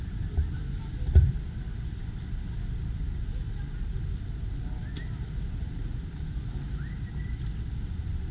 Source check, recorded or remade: recorded